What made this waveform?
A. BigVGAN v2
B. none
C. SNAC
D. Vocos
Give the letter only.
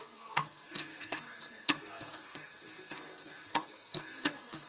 C